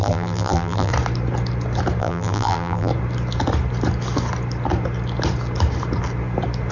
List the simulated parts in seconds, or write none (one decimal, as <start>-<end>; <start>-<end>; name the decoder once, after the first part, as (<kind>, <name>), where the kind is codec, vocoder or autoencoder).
0.0-0.9 (vocoder, BigVGAN v2); 2.0-2.9

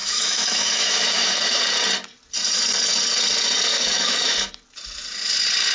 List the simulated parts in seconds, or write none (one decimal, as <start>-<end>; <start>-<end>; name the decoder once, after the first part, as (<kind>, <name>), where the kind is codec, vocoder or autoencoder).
0.0-1.6 (autoencoder, DAC-VAE); 3.7-4.5